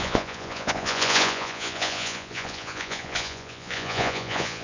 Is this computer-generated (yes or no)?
yes